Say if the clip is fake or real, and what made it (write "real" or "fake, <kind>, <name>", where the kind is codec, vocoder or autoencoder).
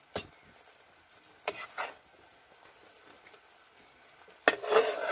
real